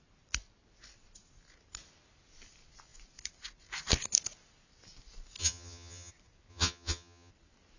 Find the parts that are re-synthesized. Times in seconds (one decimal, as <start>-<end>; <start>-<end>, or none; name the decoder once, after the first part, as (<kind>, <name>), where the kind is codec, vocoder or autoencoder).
5.4-6.1 (vocoder, HiFi-GAN); 6.5-7.3